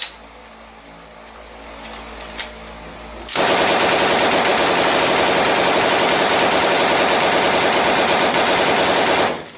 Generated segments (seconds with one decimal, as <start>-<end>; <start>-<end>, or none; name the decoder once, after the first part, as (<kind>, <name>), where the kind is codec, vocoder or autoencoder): 4.5-6.7 (vocoder, BigVGAN v2)